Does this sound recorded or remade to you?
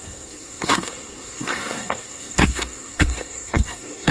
remade